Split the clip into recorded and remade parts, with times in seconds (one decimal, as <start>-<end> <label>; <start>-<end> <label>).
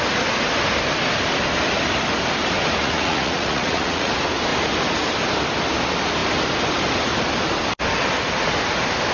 0.0-2.8 recorded; 2.8-4.1 remade; 4.1-9.1 recorded